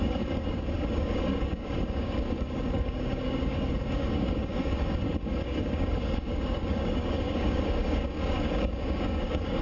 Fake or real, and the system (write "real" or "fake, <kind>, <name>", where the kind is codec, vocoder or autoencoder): fake, codec, DAC